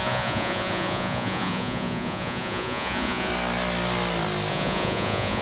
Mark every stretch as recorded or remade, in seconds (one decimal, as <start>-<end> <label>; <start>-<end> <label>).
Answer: 0.0-3.3 remade; 3.3-4.5 recorded; 4.5-5.4 remade